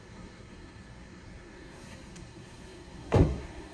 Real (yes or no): no